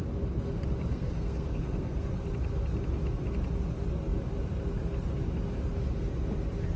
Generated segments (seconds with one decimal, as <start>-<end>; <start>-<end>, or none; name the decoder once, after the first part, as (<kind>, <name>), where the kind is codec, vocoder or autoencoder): 0.9-2.1 (codec, SNAC)